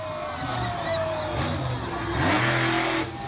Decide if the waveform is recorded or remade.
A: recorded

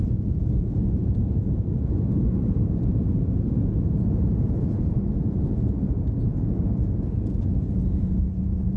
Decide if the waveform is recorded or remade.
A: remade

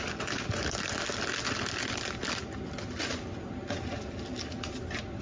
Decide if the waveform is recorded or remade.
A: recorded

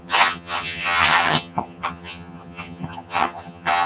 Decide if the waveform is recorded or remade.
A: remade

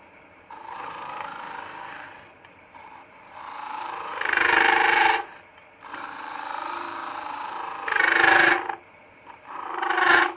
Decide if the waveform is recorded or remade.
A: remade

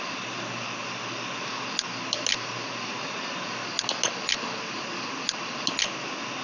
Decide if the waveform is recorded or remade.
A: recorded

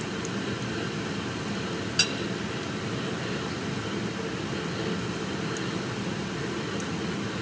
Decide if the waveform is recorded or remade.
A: recorded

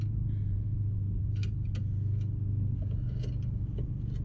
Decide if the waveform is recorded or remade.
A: recorded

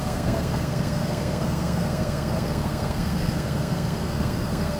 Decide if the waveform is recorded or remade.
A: remade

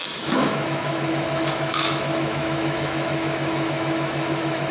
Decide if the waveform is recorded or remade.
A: remade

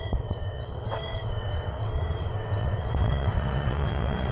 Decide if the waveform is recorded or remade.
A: remade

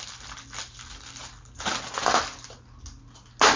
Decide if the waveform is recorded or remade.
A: recorded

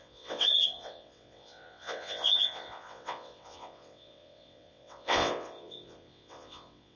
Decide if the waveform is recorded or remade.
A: remade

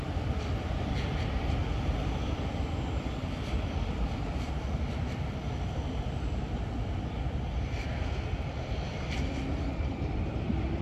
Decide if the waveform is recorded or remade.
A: remade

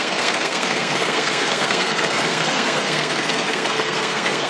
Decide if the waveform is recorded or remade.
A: remade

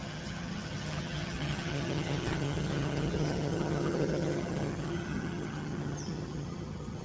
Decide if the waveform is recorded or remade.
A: remade